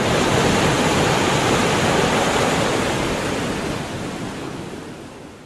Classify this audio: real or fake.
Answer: real